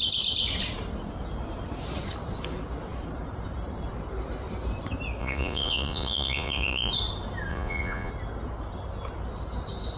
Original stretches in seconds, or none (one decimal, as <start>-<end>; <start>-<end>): 0.0-5.2; 6.9-7.5; 8.1-10.0

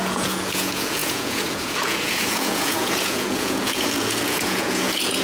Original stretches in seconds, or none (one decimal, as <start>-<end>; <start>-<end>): none

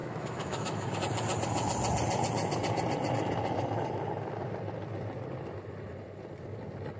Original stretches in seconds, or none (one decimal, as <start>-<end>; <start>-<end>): 1.0-7.0